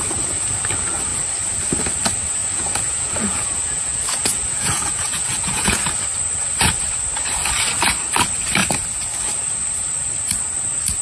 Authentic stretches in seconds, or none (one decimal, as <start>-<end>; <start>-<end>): 0.0-2.4; 5.8-11.0